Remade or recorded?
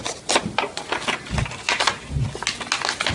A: recorded